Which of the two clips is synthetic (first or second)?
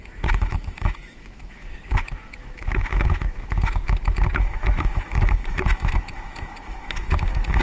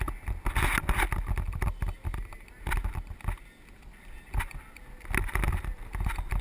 first